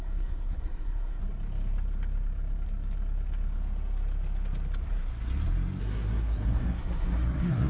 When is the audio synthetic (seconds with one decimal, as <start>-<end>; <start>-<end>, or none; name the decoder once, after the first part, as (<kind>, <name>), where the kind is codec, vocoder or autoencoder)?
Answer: 0.0-1.2 (codec, SNAC); 5.8-7.7